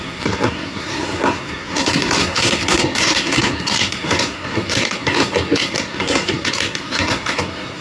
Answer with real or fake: fake